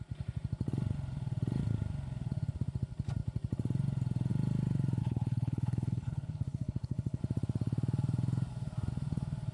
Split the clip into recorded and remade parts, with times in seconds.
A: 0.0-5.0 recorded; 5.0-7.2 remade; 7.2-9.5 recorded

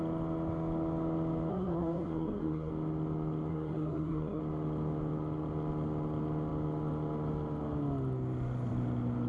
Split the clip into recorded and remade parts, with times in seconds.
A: 0.0-1.5 recorded; 1.5-2.7 remade; 2.7-3.5 recorded; 3.5-4.4 remade; 4.4-9.3 recorded

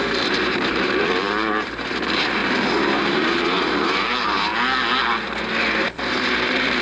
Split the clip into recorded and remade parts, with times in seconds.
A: 0.0-2.4 remade; 2.4-2.9 recorded; 2.9-4.5 remade; 4.5-5.7 recorded; 5.7-6.8 remade